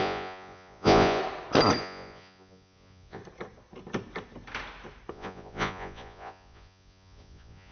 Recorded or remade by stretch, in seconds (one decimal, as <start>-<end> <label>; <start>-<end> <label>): 0.0-1.2 remade; 1.2-1.8 recorded; 1.8-3.2 remade; 3.2-5.1 recorded; 5.1-7.7 remade